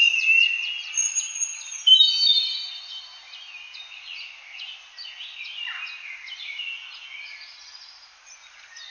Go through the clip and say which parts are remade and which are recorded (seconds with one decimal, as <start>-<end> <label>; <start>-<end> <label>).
0.0-8.9 recorded